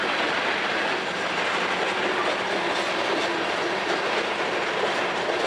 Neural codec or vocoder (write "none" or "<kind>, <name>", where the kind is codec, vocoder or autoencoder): vocoder, BigVGAN v2